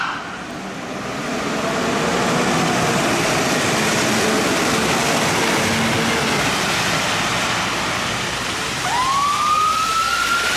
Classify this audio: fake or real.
real